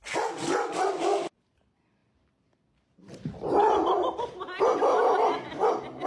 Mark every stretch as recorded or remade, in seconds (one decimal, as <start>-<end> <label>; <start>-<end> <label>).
0.0-6.1 recorded